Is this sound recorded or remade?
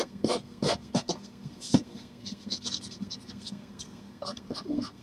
remade